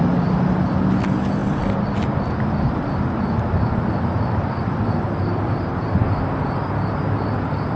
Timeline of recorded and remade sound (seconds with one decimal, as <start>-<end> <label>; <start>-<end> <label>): 0.0-7.8 recorded